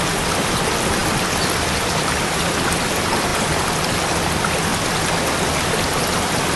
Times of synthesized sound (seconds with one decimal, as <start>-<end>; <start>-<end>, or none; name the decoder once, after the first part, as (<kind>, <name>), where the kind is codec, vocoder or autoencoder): none

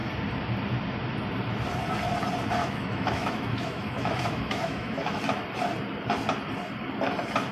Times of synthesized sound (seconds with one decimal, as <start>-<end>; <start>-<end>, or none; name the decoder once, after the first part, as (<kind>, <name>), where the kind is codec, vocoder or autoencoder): 2.6-5.2 (autoencoder, DAC-VAE)

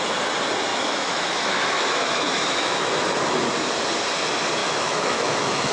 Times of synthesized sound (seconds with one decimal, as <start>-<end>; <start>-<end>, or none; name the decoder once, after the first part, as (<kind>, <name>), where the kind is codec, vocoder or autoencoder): 0.7-2.9 (autoencoder, DAC-VAE); 4.6-5.7

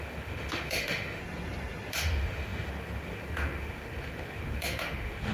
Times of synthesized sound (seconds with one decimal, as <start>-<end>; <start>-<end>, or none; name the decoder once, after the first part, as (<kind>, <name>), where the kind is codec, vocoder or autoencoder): 0.0-1.2 (autoencoder, DAC-VAE); 1.9-5.3